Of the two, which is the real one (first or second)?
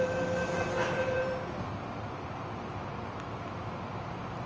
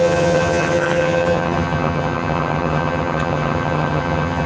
first